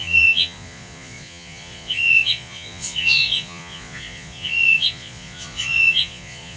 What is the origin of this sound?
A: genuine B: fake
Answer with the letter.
B